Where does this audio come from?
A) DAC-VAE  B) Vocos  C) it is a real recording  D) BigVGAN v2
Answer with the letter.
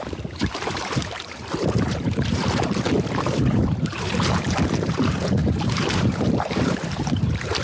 D